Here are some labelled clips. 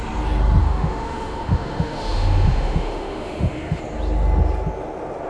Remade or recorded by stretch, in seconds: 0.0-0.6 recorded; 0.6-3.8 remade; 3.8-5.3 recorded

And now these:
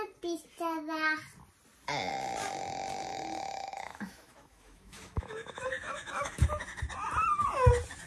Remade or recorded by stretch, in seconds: 0.0-3.1 recorded; 3.1-6.8 remade; 6.8-8.1 recorded

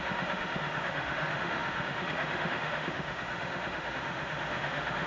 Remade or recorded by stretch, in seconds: 0.0-5.1 remade

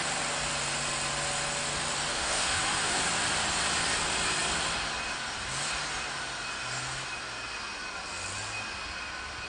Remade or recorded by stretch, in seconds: 0.0-2.1 recorded; 2.1-3.0 remade; 3.0-9.5 recorded

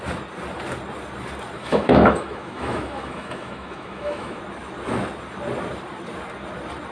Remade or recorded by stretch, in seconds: 0.0-1.6 recorded; 1.6-4.4 remade; 4.4-6.9 recorded

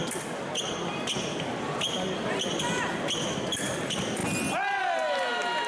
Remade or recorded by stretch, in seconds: 0.0-5.7 recorded

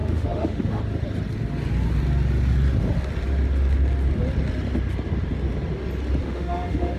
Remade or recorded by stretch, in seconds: 0.0-0.8 remade; 0.8-6.2 recorded; 6.2-7.0 remade

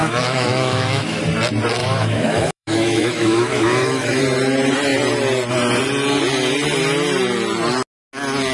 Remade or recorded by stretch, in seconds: 0.0-1.2 remade; 1.2-1.8 recorded; 1.8-4.2 remade; 4.2-8.5 recorded